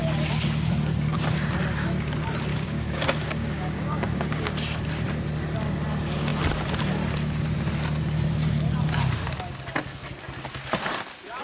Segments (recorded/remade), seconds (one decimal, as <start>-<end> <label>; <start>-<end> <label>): 0.0-2.5 recorded; 2.5-4.5 remade; 4.5-11.4 recorded